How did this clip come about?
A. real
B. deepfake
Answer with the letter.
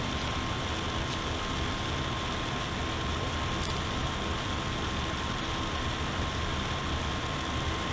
A